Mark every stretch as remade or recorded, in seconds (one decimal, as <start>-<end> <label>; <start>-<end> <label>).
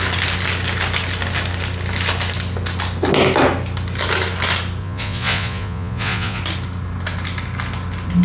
0.0-4.8 recorded; 4.8-6.4 remade; 6.4-8.2 recorded